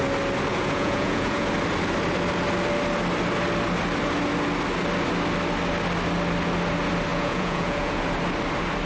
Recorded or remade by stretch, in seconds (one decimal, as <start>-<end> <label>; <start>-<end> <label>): 0.0-0.5 recorded; 0.5-1.5 remade; 1.5-7.1 recorded; 7.1-8.0 remade; 8.0-8.9 recorded